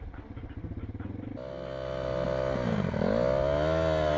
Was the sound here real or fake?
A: real